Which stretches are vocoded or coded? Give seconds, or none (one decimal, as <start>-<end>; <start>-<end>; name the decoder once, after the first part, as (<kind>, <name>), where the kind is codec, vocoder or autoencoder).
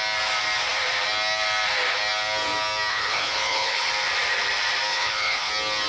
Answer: 2.9-3.9 (codec, HILCodec); 4.9-5.5